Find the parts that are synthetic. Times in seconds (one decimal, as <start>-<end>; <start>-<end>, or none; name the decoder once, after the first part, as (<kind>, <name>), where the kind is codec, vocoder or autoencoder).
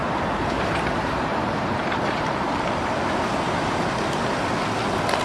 0.0-3.1 (vocoder, BigVGAN v2)